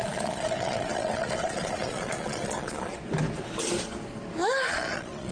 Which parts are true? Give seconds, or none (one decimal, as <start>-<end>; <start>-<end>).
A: 2.9-4.7